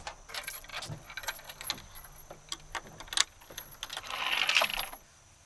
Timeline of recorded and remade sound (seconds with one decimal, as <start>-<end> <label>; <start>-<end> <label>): 0.0-0.7 remade; 0.7-4.0 recorded; 4.0-5.5 remade